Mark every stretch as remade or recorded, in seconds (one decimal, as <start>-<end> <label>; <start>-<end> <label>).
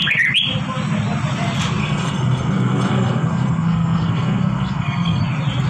0.0-1.8 recorded; 1.8-5.2 remade; 5.2-5.7 recorded